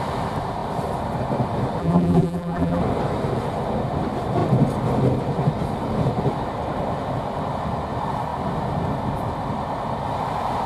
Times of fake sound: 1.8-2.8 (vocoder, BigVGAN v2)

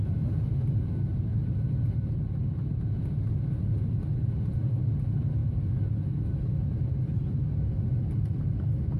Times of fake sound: 1.3-4.3 (vocoder, BigVGAN v2)

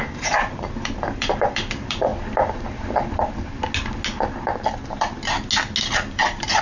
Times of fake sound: 0.0-2.1 (vocoder, BigVGAN v2); 6.1-6.6

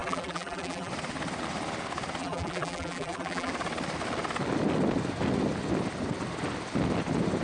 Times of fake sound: 0.0-0.9 (vocoder, BigVGAN v2); 2.2-3.5

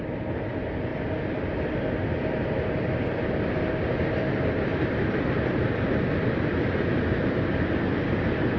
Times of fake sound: none

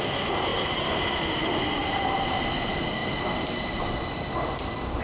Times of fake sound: 0.5-1.2 (vocoder, BigVGAN v2); 1.8-2.4; 3.0-3.9

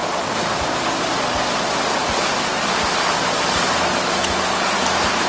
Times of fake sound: none

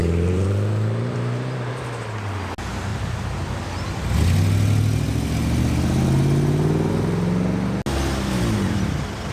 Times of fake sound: 0.0-1.7 (vocoder, BigVGAN v2); 2.9-3.5